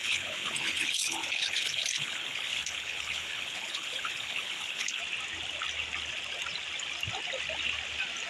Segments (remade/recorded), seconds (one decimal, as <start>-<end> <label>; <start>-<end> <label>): 0.0-5.0 remade; 5.0-8.3 recorded